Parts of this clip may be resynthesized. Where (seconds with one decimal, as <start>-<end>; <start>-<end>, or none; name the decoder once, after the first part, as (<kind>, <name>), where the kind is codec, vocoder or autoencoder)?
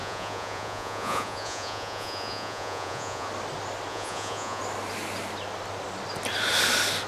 0.0-3.3 (vocoder, Vocos); 3.9-4.6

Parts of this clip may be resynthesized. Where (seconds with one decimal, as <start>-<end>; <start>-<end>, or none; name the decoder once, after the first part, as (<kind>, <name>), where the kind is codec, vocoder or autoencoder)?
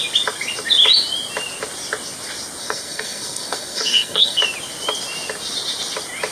2.6-4.4 (codec, SNAC)